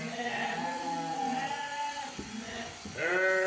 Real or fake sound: fake